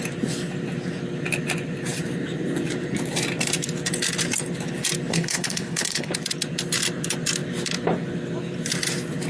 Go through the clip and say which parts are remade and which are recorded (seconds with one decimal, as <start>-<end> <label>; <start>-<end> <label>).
0.0-5.1 recorded; 5.1-6.1 remade; 6.1-9.3 recorded